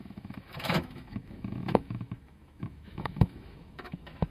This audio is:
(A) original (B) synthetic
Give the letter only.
B